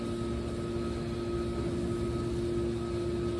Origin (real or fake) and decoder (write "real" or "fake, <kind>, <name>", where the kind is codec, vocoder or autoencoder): real